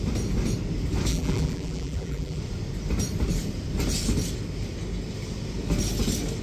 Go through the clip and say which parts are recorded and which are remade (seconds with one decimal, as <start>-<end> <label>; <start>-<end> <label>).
0.0-1.1 recorded; 1.1-2.4 remade; 2.4-6.4 recorded